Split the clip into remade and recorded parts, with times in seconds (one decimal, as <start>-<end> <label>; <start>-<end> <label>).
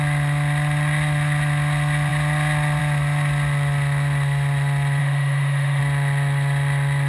0.0-5.0 recorded; 5.0-5.8 remade; 5.8-7.1 recorded